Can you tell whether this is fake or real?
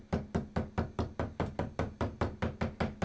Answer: real